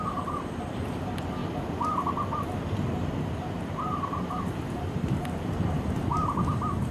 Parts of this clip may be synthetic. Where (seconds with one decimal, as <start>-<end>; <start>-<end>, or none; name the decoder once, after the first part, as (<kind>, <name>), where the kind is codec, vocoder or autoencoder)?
0.0-1.4 (vocoder, BigVGAN v2); 3.5-6.9